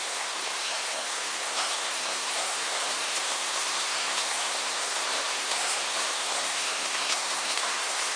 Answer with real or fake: fake